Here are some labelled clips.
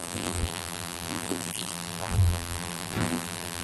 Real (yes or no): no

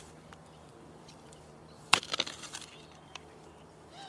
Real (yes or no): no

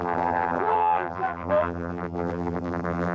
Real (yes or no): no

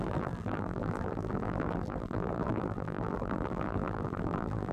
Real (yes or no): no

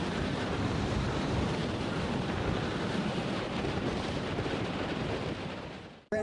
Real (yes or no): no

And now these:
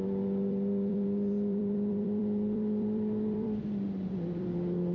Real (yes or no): no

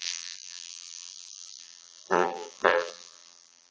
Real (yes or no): no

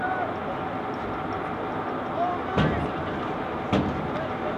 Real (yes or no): yes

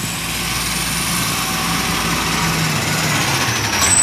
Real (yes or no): yes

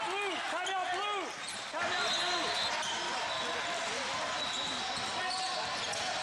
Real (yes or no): yes